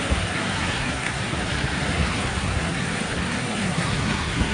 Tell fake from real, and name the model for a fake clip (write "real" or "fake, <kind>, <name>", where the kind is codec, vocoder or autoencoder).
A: fake, codec, SNAC